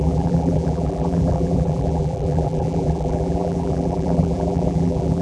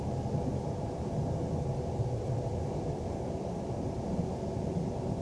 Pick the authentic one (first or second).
second